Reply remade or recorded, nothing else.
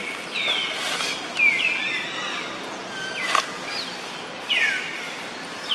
recorded